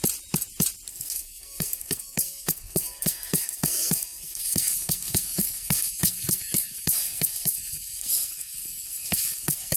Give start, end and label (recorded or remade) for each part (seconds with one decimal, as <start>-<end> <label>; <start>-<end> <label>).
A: 0.0-0.9 recorded; 0.9-9.8 remade